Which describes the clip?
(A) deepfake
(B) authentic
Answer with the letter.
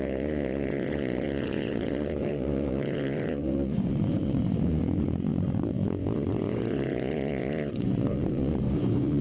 A